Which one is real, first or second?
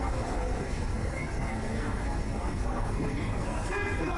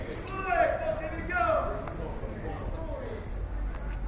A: second